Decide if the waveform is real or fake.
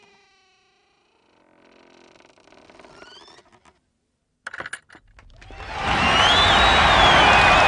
real